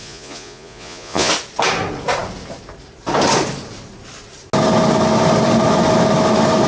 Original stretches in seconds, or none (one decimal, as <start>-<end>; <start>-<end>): 1.3-6.7